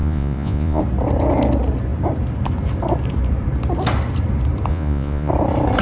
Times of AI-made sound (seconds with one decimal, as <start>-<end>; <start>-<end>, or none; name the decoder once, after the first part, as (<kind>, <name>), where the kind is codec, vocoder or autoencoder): 0.0-0.8 (vocoder, Vocos); 4.7-5.3